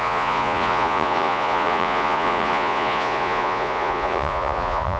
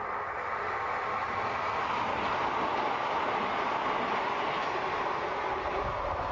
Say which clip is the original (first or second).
second